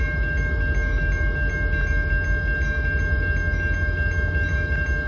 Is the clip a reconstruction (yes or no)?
no